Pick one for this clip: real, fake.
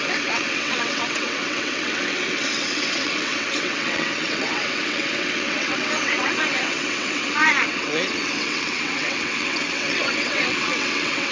fake